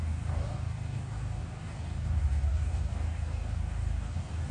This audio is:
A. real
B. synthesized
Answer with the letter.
B